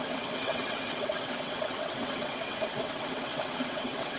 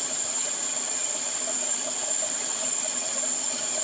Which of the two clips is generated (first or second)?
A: first